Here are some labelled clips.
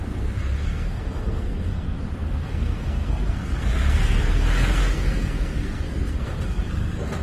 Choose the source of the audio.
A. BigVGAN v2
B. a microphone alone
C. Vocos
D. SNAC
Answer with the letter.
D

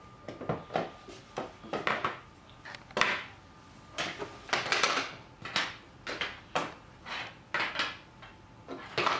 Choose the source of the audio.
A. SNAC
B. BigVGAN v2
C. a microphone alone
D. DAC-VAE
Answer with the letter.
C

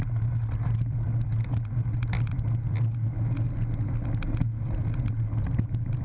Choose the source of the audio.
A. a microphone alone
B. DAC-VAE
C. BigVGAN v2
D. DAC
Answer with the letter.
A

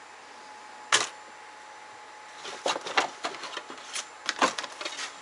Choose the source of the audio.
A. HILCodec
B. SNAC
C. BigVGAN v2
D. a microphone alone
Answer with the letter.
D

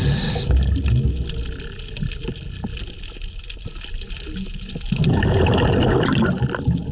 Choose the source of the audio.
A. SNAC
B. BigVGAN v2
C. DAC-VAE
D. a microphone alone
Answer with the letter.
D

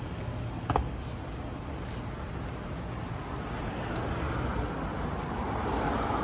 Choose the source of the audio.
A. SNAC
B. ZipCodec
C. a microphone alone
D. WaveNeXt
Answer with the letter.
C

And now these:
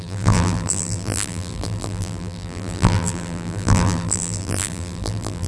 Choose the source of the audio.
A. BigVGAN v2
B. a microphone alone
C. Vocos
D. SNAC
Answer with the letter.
A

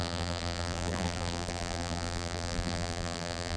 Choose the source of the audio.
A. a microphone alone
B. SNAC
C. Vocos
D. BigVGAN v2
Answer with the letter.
D